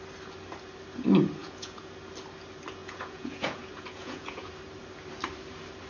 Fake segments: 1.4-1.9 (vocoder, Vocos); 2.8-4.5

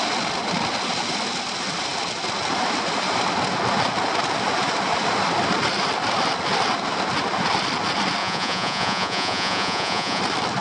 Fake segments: 8.2-10.2 (vocoder, Vocos)

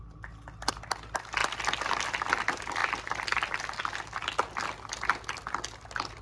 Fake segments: none

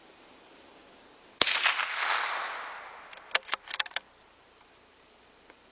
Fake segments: 0.0-0.8 (vocoder, BigVGAN v2); 4.2-5.7

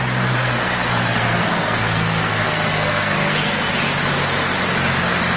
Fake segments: 0.4-3.6 (codec, SNAC)

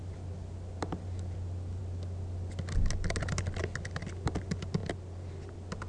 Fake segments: none

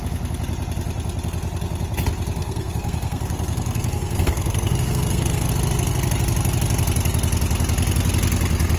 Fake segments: 2.4-5.5 (codec, SNAC)

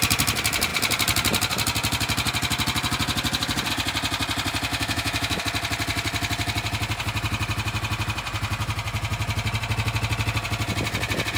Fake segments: 4.7-5.4 (autoencoder, DAC-VAE)